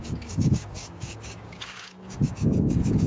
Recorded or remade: remade